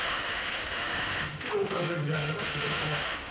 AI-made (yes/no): yes